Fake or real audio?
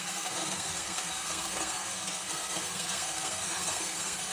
fake